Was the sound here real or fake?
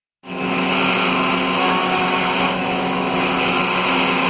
fake